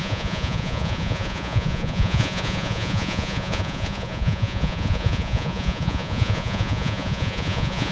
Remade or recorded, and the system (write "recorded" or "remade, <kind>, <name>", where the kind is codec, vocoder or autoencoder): remade, vocoder, Vocos